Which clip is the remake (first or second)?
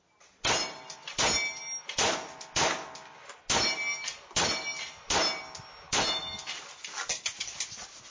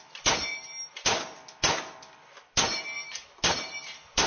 second